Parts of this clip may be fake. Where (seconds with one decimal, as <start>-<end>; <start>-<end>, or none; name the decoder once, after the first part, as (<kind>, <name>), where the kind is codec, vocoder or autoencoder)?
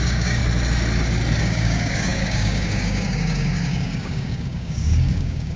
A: 0.0-0.4 (codec, DAC); 1.4-5.6